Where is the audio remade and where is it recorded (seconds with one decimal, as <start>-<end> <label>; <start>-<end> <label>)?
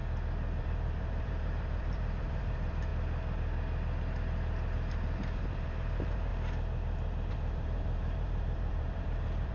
0.0-0.6 recorded; 0.6-2.9 remade; 2.9-5.4 recorded; 5.4-6.3 remade; 6.3-7.3 recorded; 7.3-9.5 remade